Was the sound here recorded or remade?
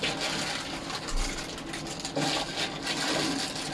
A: recorded